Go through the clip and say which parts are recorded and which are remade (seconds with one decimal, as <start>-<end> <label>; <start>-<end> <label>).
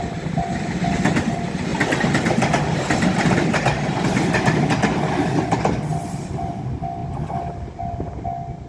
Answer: 0.0-8.7 recorded